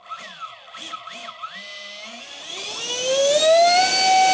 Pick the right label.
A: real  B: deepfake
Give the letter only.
A